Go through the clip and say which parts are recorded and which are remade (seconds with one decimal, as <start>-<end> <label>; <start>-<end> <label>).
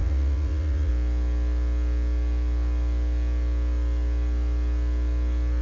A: 0.0-0.9 remade; 0.9-5.6 recorded